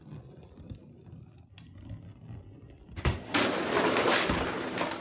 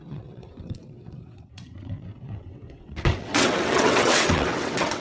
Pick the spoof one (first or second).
second